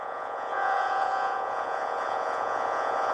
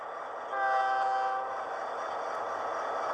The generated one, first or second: first